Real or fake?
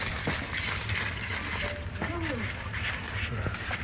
real